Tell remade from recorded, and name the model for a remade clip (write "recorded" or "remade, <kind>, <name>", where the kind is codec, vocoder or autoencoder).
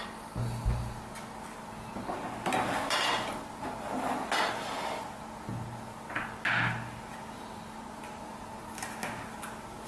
recorded